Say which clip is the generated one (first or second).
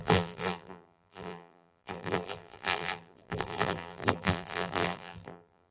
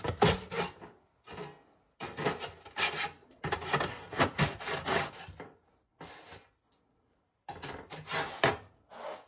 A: first